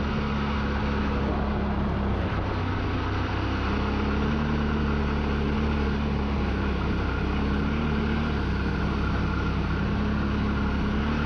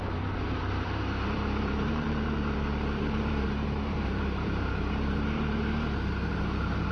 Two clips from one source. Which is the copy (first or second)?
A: second